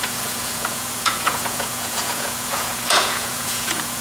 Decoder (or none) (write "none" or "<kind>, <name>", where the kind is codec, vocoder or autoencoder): vocoder, Vocos